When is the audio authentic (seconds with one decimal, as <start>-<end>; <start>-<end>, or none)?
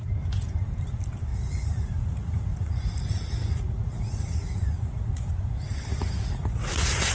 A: 0.0-1.3; 5.3-5.9